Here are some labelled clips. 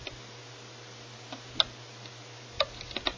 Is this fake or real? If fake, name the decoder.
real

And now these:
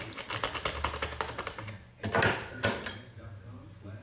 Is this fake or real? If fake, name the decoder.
real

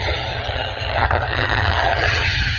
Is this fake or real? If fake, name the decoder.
fake, vocoder, HiFi-GAN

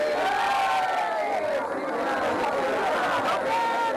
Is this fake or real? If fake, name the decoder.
real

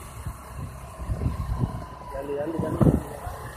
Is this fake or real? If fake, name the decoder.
real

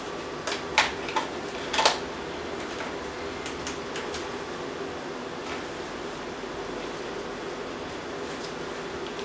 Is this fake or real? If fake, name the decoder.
real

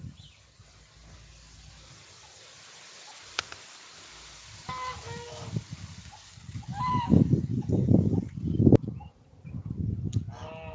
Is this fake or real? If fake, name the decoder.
real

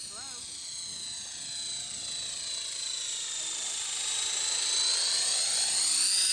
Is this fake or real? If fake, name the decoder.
real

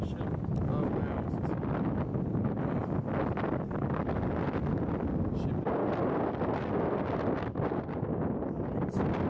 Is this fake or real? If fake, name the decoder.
real